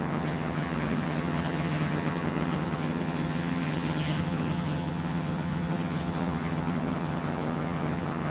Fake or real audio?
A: fake